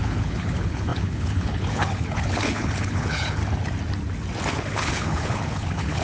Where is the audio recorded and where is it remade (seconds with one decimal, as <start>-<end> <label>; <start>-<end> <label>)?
0.0-3.4 remade; 3.4-4.5 recorded; 4.5-6.0 remade